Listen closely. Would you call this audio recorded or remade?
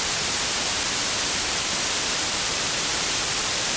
remade